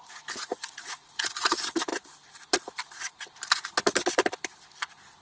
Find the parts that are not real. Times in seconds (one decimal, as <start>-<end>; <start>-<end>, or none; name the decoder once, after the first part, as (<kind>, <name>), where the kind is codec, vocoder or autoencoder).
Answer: 0.0-1.9 (vocoder, Vocos)